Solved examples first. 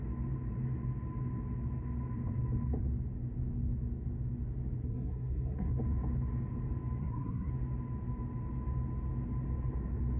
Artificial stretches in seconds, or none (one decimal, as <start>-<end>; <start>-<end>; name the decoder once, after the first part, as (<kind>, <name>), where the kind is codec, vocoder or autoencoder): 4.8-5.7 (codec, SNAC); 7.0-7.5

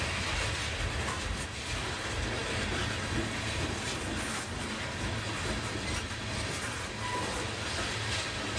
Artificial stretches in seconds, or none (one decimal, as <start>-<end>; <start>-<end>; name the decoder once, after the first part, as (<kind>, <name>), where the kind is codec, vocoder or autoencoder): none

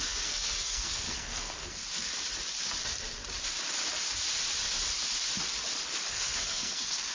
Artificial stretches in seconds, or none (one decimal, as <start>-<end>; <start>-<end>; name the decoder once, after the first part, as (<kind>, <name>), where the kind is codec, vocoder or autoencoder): 0.0-1.8 (codec, SNAC); 6.1-7.1

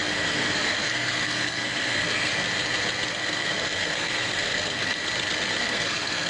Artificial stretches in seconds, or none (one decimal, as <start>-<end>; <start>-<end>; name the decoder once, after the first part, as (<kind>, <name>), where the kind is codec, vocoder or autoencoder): 0.0-2.3 (codec, SNAC); 3.1-5.0; 5.6-6.3

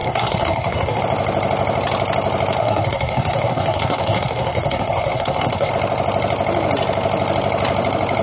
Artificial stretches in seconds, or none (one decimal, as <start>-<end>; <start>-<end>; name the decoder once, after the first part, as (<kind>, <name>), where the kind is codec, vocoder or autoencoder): 0.0-1.0 (codec, SNAC); 2.6-5.7

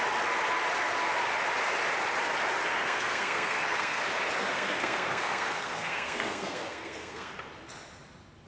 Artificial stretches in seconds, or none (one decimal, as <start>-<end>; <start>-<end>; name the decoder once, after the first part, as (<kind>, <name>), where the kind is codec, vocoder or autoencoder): 2.7-4.0 (codec, SNAC); 4.5-7.3